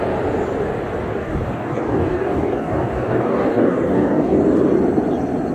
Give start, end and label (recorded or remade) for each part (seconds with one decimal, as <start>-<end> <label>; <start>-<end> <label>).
0.0-1.1 recorded; 1.1-4.4 remade; 4.4-5.5 recorded